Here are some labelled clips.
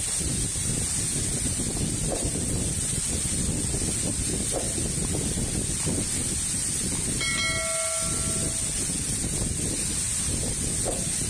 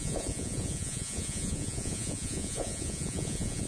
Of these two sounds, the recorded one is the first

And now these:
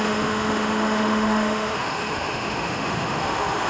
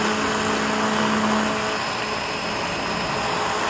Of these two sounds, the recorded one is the second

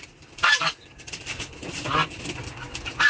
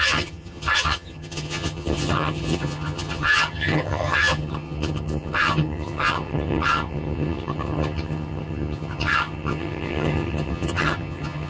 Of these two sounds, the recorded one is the first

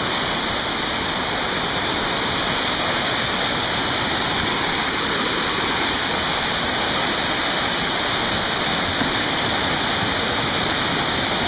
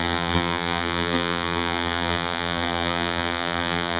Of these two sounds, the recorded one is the first